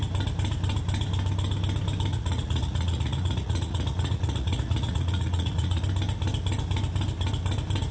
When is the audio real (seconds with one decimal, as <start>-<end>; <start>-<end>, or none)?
0.0-2.1; 5.8-7.9